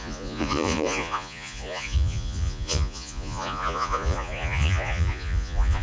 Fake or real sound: fake